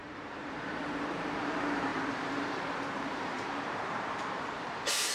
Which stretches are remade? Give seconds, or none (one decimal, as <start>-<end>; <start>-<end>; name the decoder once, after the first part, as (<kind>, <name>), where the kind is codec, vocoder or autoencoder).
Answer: 0.0-5.1 (vocoder, BigVGAN v2)